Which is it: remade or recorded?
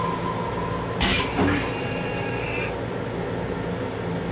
recorded